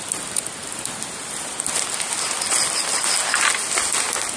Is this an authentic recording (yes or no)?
yes